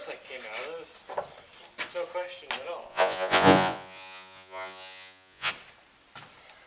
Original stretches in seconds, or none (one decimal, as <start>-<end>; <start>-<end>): 0.0-2.9; 5.5-6.7